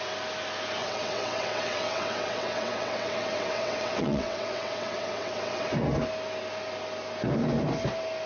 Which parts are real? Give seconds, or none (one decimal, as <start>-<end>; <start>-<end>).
0.0-0.8; 5.7-8.3